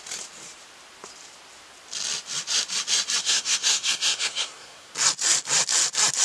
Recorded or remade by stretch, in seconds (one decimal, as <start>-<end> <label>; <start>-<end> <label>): 0.0-3.2 recorded; 3.2-4.9 remade; 4.9-6.2 recorded